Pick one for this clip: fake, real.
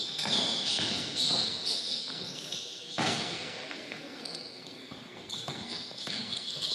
fake